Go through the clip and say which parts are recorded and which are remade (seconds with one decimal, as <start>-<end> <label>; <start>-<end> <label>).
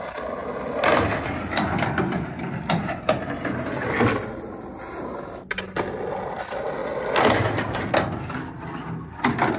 0.0-9.6 recorded